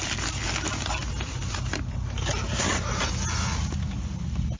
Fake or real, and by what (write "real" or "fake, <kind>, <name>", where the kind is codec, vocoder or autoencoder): real